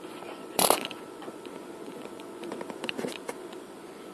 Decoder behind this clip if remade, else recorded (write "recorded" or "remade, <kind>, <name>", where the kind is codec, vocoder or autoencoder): remade, vocoder, Vocos